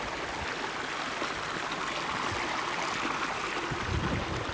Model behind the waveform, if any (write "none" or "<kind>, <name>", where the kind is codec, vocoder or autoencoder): none